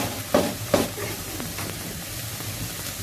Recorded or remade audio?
remade